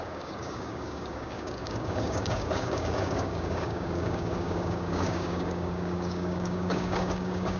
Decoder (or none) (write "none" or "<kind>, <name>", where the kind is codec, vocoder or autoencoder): codec, DAC